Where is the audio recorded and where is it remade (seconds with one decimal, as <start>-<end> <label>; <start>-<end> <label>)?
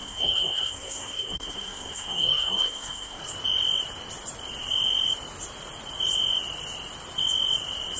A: 0.0-3.2 remade; 3.2-8.0 recorded